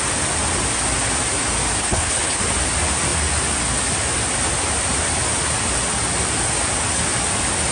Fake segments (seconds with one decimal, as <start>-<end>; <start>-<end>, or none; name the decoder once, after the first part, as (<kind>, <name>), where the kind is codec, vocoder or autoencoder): 1.8-2.4 (codec, HILCodec)